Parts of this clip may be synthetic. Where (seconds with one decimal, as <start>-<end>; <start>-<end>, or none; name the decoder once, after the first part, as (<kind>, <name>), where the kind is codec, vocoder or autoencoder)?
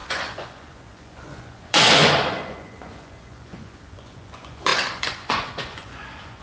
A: 0.0-6.4 (vocoder, Vocos)